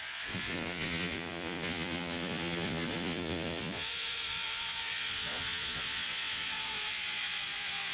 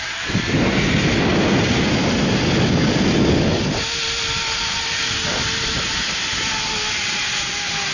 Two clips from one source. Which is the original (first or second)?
second